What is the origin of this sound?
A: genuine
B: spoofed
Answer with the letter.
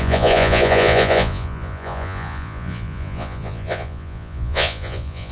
B